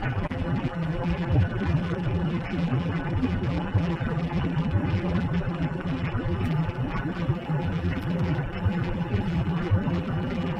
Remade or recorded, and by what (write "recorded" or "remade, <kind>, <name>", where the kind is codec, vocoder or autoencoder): remade, vocoder, BigVGAN v2